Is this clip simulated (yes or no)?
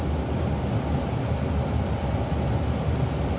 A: no